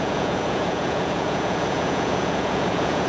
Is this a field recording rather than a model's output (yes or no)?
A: no